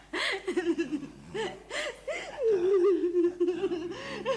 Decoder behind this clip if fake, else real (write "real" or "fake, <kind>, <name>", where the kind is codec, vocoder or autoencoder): real